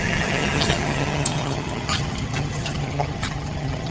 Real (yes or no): no